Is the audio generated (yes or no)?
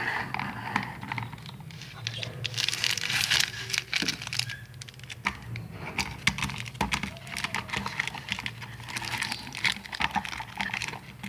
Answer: no